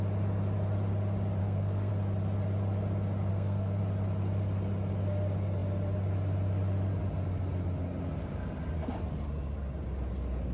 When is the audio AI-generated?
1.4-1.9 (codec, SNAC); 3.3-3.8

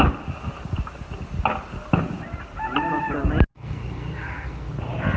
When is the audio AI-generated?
3.5-4.7 (codec, SNAC)

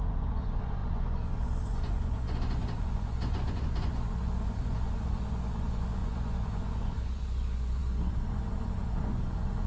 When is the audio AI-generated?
0.0-9.7 (vocoder, Vocos)

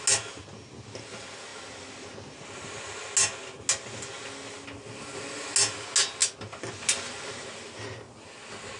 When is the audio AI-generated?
none

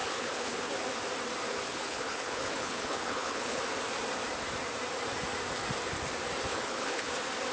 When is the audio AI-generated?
0.0-0.7 (codec, HILCodec); 1.7-3.6; 6.5-7.1

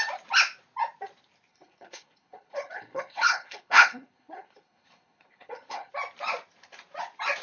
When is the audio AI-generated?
1.5-5.9 (codec, HILCodec)

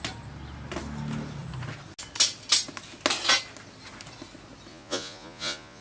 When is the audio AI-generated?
4.7-5.8 (vocoder, Vocos)